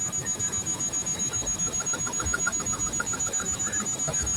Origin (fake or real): fake